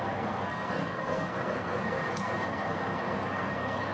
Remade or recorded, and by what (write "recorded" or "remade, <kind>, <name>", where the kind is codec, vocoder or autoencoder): remade, codec, SNAC